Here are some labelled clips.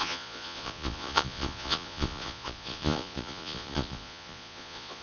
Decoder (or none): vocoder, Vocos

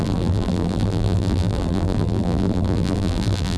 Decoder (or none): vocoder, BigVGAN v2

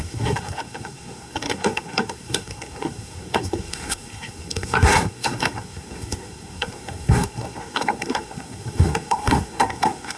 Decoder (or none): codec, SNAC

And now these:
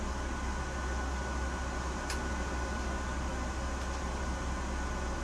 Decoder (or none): none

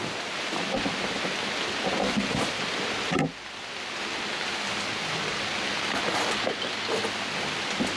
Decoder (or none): none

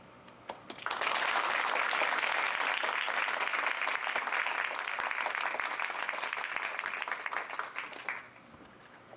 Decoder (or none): none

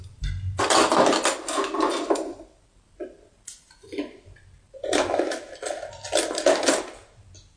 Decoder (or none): none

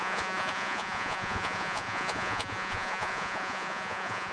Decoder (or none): vocoder, Vocos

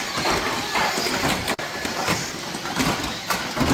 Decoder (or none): none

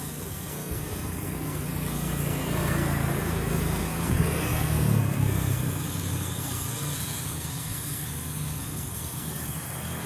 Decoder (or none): codec, SNAC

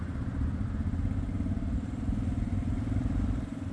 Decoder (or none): vocoder, BigVGAN v2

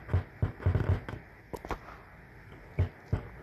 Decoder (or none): none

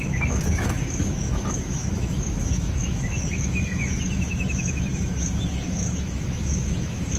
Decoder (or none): autoencoder, DAC-VAE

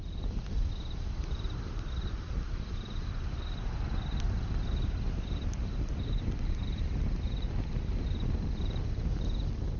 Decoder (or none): none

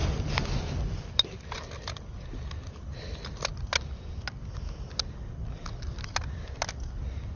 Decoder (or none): none